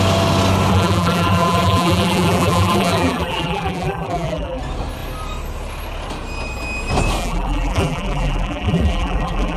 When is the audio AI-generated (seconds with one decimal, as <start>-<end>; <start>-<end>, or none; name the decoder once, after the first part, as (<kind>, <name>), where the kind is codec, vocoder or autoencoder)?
0.7-4.6 (vocoder, BigVGAN v2); 7.2-9.6